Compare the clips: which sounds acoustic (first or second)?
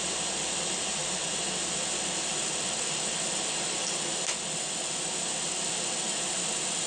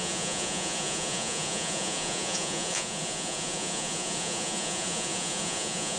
first